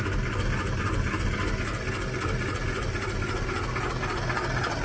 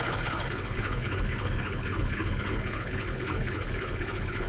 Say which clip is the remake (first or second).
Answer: second